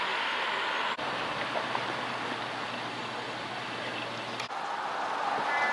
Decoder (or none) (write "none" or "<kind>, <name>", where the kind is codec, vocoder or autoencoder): none